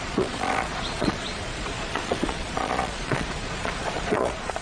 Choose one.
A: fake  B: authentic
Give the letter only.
A